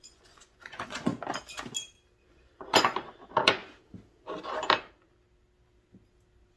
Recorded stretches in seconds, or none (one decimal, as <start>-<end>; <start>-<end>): 1.1-2.3; 3.6-6.6